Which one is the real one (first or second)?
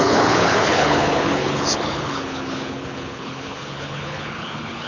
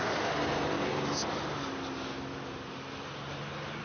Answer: second